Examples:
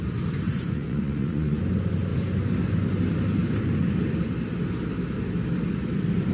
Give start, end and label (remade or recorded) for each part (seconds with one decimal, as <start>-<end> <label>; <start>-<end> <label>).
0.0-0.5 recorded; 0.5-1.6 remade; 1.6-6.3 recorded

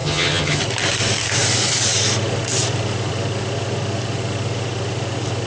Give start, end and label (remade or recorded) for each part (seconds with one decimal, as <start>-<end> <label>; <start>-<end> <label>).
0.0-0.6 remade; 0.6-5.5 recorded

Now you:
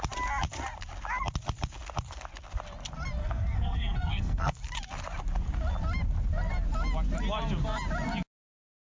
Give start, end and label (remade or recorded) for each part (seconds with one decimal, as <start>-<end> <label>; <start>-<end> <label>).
0.0-3.2 recorded; 3.2-4.6 remade; 4.6-9.0 recorded